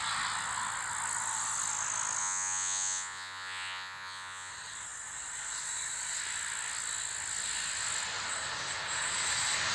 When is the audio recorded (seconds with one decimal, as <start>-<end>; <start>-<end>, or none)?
0.0-2.2; 4.5-9.7